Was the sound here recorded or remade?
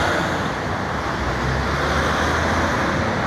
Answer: recorded